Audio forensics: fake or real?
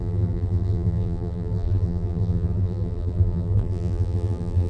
fake